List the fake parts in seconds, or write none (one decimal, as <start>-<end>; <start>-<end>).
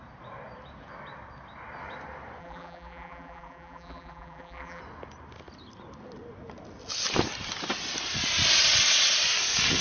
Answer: 2.4-4.8